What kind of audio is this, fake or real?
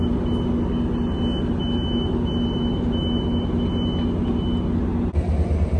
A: real